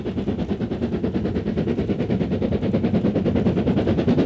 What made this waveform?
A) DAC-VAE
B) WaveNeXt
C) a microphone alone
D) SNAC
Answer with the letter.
C